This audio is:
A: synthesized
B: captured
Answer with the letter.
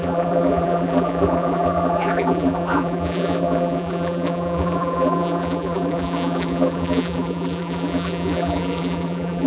A